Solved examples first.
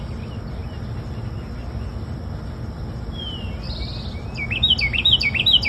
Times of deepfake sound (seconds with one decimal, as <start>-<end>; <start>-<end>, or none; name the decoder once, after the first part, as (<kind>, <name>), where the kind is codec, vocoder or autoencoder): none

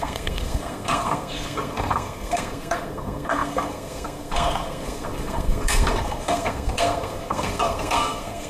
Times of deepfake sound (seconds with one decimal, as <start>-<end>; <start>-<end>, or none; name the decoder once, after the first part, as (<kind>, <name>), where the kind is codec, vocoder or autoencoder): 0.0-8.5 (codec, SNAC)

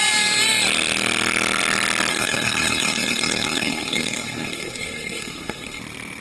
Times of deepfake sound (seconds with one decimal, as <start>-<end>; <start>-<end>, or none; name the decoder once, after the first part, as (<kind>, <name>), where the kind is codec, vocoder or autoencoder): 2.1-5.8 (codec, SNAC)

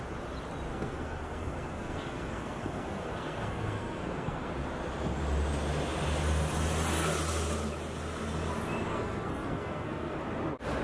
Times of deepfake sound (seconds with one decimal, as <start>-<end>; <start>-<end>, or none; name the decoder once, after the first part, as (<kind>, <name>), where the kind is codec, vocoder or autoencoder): 0.7-4.5 (codec, SNAC); 8.9-10.2

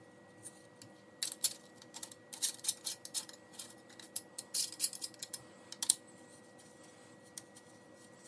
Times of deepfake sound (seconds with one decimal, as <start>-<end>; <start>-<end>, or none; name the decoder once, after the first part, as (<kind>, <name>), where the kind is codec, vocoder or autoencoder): none